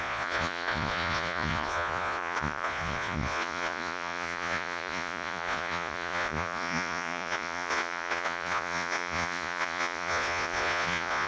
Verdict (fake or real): fake